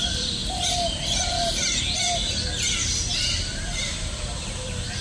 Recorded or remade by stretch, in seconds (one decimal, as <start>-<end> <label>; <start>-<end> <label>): 0.0-0.4 remade; 0.4-3.4 recorded; 3.4-5.0 remade